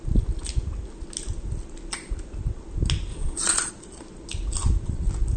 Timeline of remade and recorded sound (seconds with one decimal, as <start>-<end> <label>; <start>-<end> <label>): 0.0-3.1 recorded; 3.1-3.7 remade; 3.7-5.4 recorded